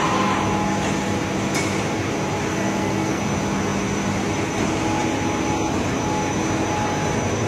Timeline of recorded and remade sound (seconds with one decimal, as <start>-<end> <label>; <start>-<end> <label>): 0.0-2.5 recorded; 2.5-3.2 remade; 3.2-7.5 recorded